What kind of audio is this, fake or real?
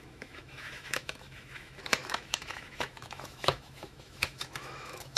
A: fake